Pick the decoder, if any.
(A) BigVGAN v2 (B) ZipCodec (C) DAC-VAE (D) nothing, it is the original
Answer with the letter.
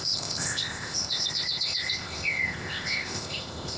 B